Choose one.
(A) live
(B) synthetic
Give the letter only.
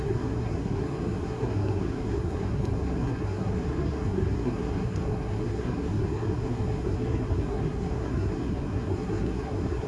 B